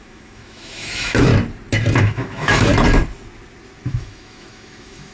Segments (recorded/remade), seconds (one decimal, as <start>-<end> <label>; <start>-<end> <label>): 0.0-1.3 remade; 1.3-2.0 recorded; 2.0-2.7 remade; 2.7-3.9 recorded; 3.9-5.1 remade